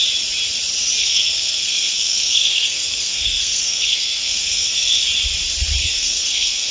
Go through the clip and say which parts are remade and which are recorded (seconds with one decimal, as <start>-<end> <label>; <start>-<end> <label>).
0.0-1.0 recorded; 1.0-5.0 remade; 5.0-5.8 recorded; 5.8-6.7 remade